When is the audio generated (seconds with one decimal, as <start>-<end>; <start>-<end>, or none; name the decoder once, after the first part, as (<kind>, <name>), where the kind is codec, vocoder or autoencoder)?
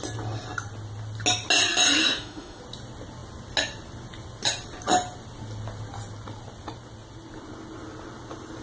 2.0-2.6 (autoencoder, DAC-VAE)